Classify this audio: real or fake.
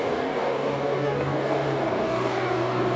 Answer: fake